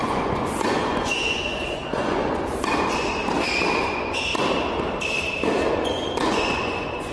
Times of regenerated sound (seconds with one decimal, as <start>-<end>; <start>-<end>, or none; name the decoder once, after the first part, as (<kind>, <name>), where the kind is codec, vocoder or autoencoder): 0.0-3.2 (vocoder, Vocos); 3.8-4.3; 5.7-7.1